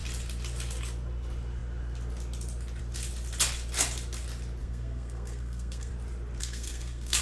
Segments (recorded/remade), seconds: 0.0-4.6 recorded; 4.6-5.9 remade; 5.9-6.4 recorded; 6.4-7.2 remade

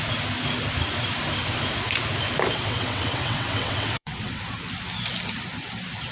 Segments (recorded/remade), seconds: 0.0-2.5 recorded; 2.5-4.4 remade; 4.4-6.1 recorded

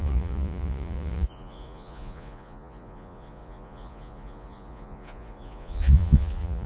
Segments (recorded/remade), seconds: 0.0-6.7 remade